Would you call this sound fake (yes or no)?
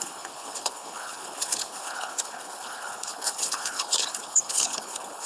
yes